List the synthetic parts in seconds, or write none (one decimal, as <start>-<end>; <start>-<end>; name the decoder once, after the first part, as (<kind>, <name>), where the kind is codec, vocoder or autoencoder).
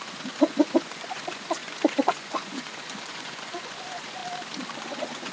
0.0-4.2 (vocoder, Vocos); 4.8-5.3